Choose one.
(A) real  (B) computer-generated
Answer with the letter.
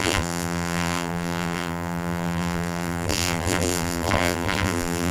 B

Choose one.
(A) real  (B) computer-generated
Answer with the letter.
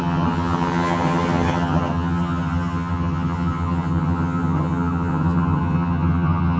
B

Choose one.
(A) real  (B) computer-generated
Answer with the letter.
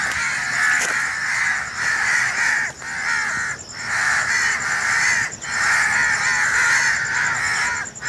A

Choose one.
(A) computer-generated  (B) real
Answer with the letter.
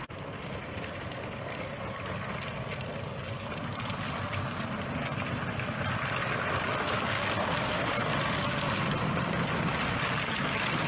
B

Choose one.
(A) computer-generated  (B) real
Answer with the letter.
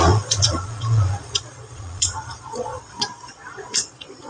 A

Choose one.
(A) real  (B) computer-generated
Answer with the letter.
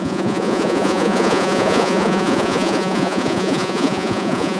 B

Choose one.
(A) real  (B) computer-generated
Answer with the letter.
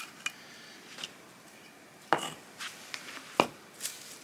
A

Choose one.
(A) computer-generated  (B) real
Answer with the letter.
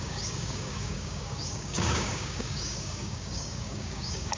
A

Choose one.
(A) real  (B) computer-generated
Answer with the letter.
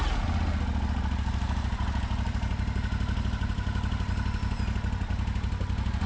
A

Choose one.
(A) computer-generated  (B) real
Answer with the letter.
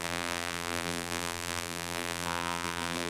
A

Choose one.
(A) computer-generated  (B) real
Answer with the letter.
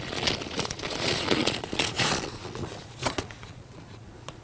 A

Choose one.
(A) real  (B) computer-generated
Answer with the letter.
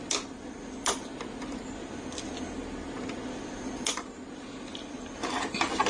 A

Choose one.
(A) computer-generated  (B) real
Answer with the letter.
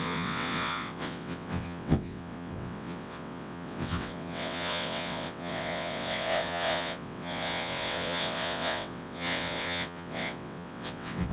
A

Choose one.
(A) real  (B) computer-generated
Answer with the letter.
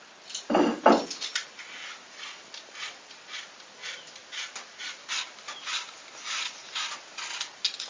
A